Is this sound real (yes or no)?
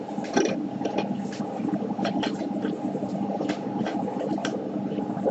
yes